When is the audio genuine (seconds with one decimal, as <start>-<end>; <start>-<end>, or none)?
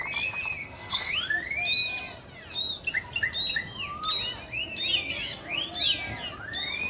0.0-0.6; 1.1-6.9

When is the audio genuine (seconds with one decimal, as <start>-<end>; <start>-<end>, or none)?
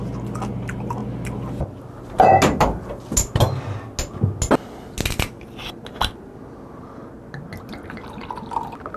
0.0-9.0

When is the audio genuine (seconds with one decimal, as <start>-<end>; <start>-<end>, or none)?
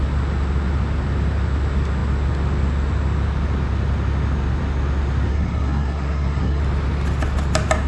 0.0-5.3; 6.6-7.9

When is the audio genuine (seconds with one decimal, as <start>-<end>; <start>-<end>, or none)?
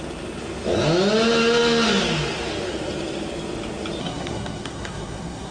0.0-4.0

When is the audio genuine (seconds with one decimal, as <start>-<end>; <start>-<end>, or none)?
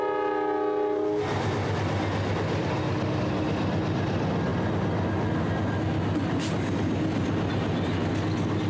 0.0-8.7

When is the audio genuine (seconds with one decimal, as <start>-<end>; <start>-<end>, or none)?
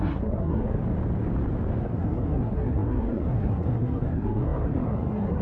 0.8-1.8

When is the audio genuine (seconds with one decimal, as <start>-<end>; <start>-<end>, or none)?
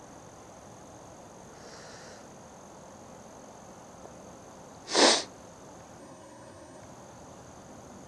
0.0-6.0; 6.8-8.1